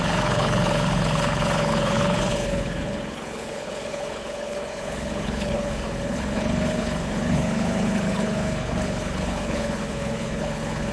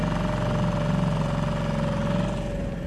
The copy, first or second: first